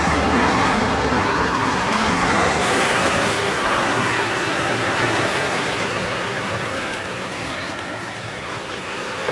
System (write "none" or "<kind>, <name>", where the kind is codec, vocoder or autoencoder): codec, SNAC